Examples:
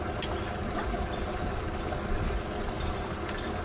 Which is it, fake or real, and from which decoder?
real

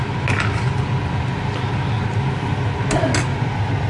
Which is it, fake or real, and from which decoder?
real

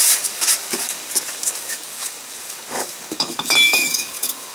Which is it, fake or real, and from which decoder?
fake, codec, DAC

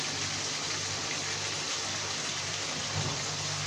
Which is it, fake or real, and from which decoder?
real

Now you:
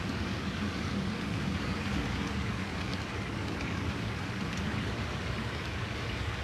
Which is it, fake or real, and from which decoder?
fake, codec, DAC